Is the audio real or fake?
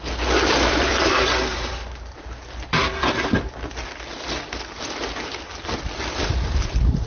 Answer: fake